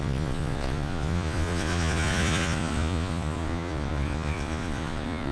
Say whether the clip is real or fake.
fake